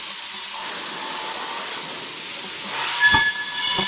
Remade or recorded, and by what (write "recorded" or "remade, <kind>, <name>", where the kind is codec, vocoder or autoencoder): recorded